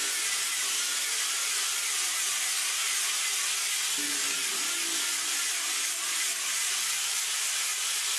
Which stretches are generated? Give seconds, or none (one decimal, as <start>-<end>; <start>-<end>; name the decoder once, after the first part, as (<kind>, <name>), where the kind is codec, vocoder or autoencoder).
6.5-7.7 (vocoder, BigVGAN v2)